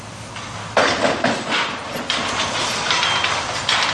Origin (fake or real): real